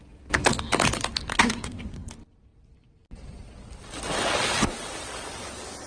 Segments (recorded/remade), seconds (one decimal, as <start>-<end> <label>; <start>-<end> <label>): 0.0-1.3 recorded; 1.3-2.1 remade; 2.1-5.9 recorded